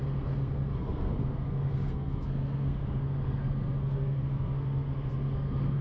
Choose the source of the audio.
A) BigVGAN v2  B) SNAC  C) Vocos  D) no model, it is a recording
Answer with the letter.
B